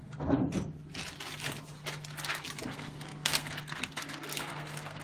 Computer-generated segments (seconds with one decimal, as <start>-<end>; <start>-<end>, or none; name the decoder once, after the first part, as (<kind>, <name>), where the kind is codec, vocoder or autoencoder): 0.0-0.4 (codec, SNAC); 2.7-5.0

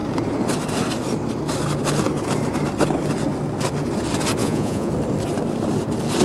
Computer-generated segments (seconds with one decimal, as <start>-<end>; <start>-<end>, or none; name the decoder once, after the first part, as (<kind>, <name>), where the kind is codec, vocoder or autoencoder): 4.4-4.9 (vocoder, Vocos)

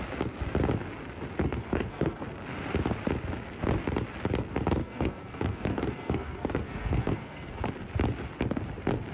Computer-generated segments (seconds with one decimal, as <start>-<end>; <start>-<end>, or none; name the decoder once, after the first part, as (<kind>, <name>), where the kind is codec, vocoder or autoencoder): 1.4-2.2 (codec, SNAC); 4.8-7.7

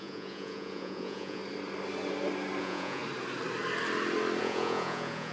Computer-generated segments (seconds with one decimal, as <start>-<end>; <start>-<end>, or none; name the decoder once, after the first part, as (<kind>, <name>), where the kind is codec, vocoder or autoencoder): 0.0-1.4 (vocoder, Vocos); 2.6-3.0; 4.4-5.3

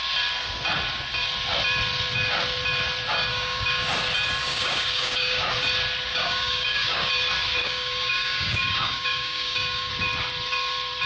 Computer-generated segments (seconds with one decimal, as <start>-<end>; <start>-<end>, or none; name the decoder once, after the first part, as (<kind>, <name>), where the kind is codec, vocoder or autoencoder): 3.3-3.9 (codec, DAC); 4.4-5.5; 6.1-7.1; 7.6-9.9

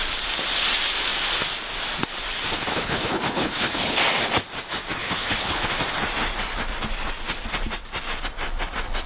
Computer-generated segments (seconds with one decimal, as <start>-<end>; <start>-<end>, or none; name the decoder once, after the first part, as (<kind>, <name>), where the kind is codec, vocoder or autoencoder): 2.7-4.0 (codec, HILCodec); 5.0-5.6

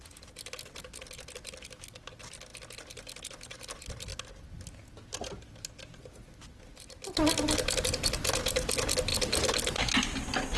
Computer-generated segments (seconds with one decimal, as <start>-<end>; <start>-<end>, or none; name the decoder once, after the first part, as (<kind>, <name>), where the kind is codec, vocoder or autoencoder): none